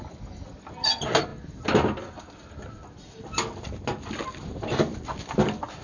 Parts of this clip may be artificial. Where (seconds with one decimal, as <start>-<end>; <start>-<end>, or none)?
none